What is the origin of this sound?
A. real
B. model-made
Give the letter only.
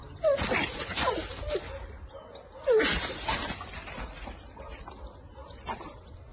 A